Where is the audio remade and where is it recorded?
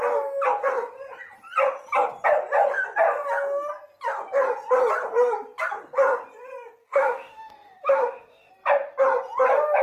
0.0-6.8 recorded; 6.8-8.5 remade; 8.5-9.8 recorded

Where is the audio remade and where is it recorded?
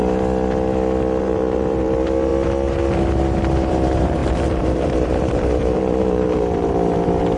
0.0-1.2 recorded; 1.2-2.3 remade; 2.3-3.7 recorded; 3.7-7.4 remade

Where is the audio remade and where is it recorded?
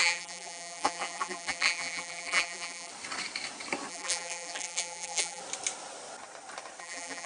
0.0-2.9 remade; 2.9-3.9 recorded; 3.9-5.4 remade; 5.4-6.8 recorded; 6.8-7.3 remade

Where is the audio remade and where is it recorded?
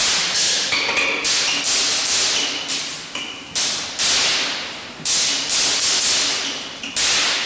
0.0-7.5 recorded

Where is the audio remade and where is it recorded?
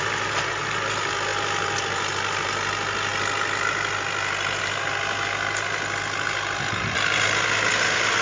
0.0-8.2 recorded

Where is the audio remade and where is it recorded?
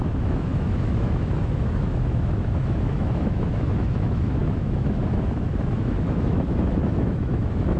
0.0-7.8 remade